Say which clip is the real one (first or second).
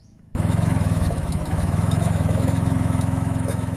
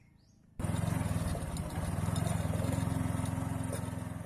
second